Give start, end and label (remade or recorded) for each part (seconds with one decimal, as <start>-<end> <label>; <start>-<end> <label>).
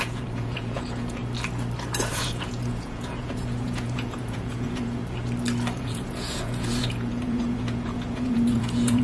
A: 0.0-1.2 remade; 1.2-2.1 recorded; 2.1-5.0 remade; 5.0-5.8 recorded; 5.8-9.0 remade